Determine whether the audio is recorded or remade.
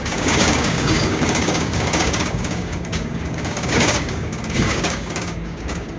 remade